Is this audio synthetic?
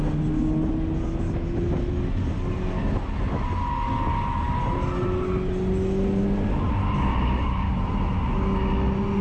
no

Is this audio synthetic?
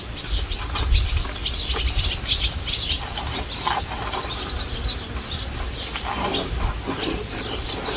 no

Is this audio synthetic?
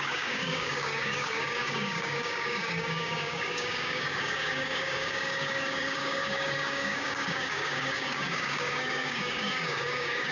yes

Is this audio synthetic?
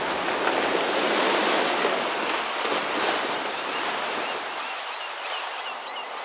no